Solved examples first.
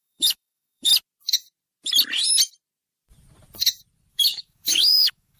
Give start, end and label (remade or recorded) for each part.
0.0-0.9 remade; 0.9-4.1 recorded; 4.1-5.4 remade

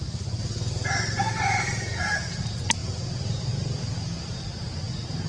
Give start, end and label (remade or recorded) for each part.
0.0-5.3 recorded

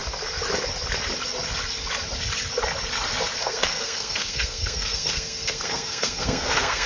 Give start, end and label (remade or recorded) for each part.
0.0-3.4 recorded; 3.4-6.9 remade

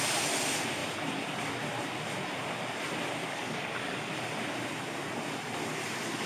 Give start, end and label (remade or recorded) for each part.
0.0-3.2 recorded; 3.2-4.1 remade; 4.1-6.3 recorded

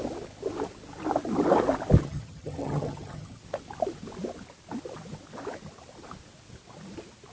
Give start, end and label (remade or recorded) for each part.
0.0-2.0 recorded; 2.0-3.4 remade; 3.4-7.3 recorded

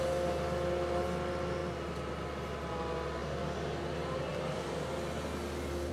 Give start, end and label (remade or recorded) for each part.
0.0-5.9 recorded